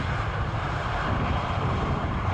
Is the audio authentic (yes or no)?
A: no